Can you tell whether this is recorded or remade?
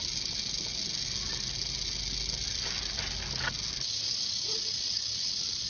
recorded